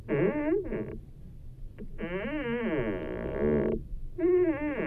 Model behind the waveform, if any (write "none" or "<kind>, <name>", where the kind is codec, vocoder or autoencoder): none